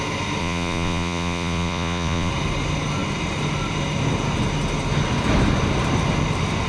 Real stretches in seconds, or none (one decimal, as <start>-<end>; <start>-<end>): 0.0-0.4; 2.3-6.7